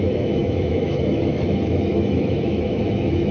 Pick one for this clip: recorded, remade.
remade